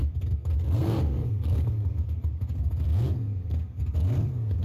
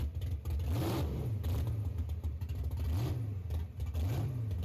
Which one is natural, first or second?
second